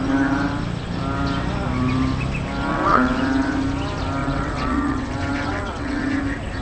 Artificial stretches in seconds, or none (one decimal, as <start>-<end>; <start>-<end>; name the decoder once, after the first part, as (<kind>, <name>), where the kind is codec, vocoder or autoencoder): 2.7-3.2 (vocoder, WaveNeXt); 4.2-6.0